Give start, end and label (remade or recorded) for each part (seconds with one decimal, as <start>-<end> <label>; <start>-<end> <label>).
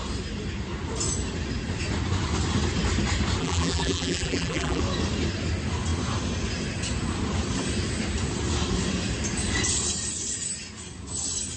0.0-3.4 recorded; 3.4-4.8 remade; 4.8-11.6 recorded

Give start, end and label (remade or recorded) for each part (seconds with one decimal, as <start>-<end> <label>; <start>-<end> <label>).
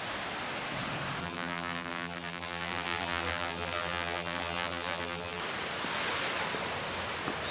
0.0-1.2 recorded; 1.2-5.4 remade; 5.4-7.5 recorded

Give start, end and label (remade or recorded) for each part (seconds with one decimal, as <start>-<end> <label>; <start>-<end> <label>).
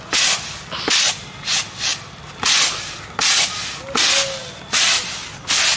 0.0-5.8 recorded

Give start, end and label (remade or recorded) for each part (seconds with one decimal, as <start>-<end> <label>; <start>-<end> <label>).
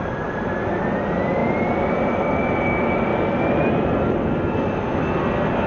0.0-5.7 recorded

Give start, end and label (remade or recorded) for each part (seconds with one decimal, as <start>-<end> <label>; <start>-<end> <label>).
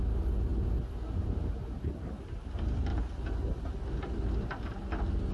0.0-5.3 recorded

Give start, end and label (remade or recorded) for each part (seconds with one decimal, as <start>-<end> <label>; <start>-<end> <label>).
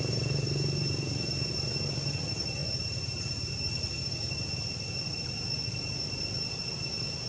0.0-7.3 recorded